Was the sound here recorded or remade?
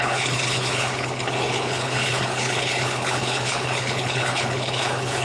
remade